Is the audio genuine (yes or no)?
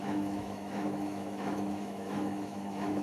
no